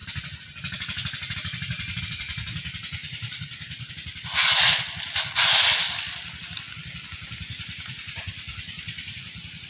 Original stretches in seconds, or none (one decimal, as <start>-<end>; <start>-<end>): 0.0-3.0; 3.9-9.7